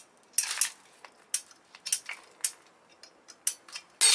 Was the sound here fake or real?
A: real